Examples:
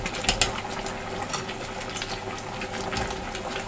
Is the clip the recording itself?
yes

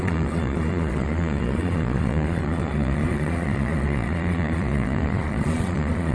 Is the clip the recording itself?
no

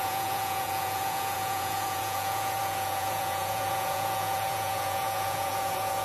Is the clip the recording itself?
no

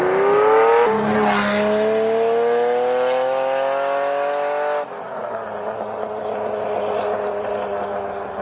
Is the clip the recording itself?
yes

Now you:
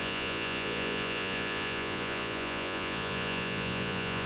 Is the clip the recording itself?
no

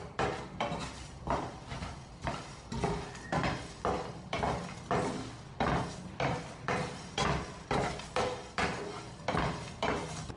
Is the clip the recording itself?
yes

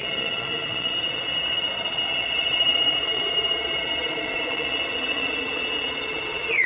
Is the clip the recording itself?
no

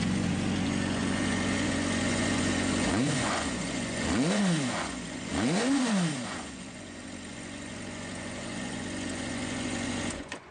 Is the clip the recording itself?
no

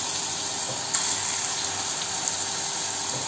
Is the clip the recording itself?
yes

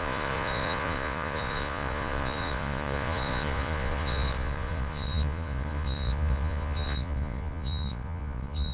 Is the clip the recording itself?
no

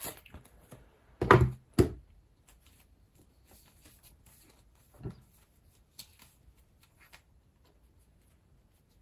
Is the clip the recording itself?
yes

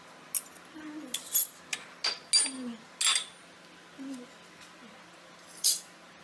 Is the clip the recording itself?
yes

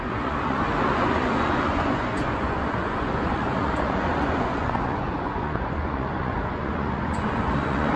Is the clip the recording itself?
no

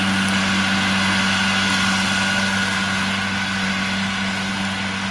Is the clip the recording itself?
yes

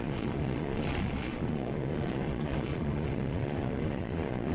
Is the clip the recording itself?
no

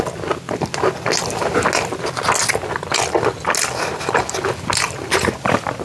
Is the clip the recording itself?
yes